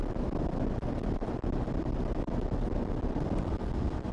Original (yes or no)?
yes